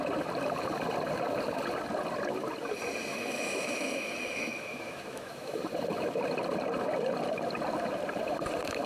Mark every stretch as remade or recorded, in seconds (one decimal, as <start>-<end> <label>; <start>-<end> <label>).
0.0-3.1 recorded; 3.1-5.6 remade; 5.6-8.9 recorded